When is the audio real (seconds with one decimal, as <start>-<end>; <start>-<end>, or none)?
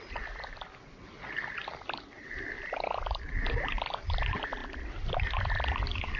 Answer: 0.0-4.6; 5.5-6.2